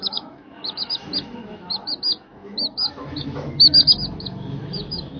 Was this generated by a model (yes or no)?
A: yes